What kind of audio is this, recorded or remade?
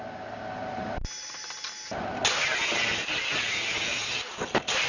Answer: recorded